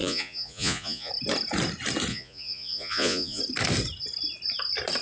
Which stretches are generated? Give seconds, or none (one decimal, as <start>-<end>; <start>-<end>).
0.0-1.1; 2.1-3.4